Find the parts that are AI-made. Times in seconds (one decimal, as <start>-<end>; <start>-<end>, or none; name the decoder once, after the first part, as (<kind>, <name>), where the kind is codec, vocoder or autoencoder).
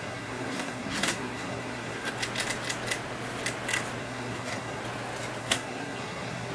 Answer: 0.0-2.1 (codec, SNAC); 4.0-4.8; 5.4-6.5